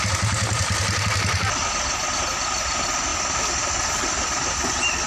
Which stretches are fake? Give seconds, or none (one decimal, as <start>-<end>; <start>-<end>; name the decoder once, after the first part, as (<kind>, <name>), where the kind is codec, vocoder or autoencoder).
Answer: none